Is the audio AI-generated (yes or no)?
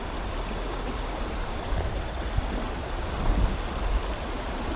no